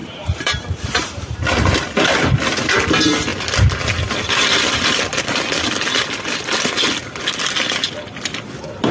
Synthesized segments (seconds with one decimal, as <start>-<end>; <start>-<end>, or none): 0.0-1.4